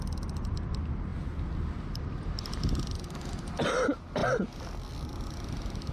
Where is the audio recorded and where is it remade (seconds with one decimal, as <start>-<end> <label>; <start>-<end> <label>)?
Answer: 0.0-5.9 recorded